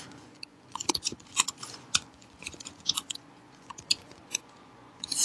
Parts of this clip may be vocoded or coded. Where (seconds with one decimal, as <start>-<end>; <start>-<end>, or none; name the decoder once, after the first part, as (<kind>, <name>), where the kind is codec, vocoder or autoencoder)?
0.0-5.2 (vocoder, Vocos)